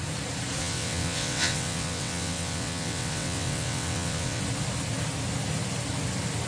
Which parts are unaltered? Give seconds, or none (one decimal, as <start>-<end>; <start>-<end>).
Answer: 0.0-0.6; 4.4-6.5